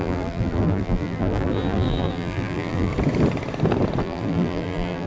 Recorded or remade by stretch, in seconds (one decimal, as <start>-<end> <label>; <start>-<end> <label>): 0.0-2.9 remade; 2.9-4.0 recorded; 4.0-5.1 remade